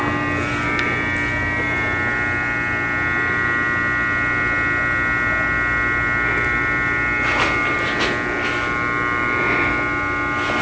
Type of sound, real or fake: real